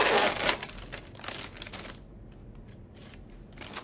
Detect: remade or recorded recorded